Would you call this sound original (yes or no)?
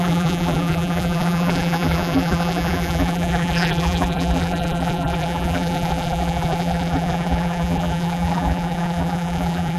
no